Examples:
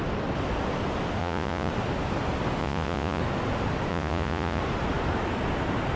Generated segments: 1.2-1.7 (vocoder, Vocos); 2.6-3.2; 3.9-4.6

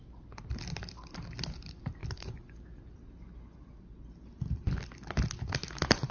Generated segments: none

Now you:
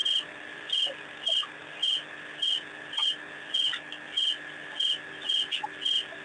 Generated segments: none

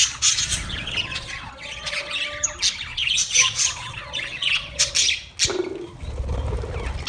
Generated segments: 0.0-2.2 (vocoder, Vocos); 2.9-4.9

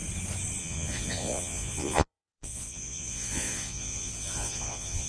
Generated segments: 0.6-5.1 (vocoder, Vocos)

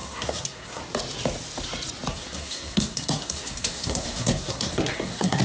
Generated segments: 0.0-0.8 (codec, SNAC); 2.1-5.4